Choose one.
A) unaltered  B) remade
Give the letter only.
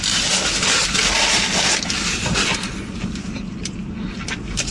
A